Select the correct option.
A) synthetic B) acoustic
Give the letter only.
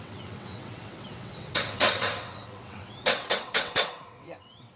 A